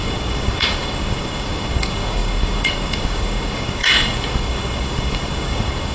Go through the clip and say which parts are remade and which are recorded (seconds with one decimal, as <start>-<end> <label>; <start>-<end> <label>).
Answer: 0.0-5.9 remade